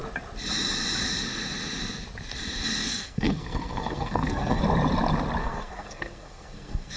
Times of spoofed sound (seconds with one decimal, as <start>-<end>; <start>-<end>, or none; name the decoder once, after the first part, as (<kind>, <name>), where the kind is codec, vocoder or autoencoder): 2.8-4.6 (codec, SNAC); 5.4-7.0